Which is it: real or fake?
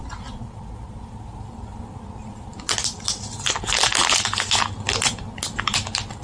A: real